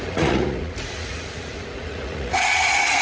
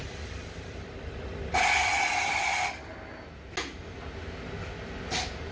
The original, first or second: second